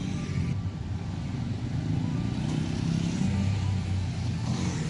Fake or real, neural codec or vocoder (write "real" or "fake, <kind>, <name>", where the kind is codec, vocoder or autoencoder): real